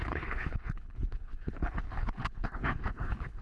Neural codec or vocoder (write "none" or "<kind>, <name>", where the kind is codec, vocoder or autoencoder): codec, HILCodec